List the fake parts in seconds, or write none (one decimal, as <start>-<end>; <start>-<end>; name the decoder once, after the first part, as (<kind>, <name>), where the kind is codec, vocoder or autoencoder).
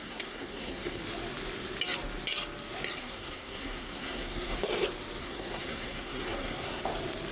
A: 0.0-1.0 (codec, SNAC); 3.0-4.6; 5.2-6.8